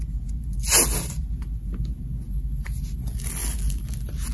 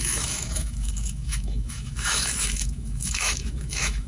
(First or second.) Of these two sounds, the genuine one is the first